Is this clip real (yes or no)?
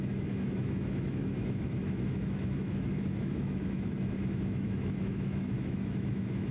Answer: no